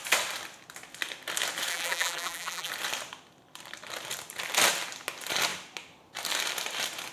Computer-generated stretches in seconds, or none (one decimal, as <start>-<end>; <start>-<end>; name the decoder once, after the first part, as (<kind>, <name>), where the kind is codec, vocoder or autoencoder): 1.7-2.7 (vocoder, BigVGAN v2)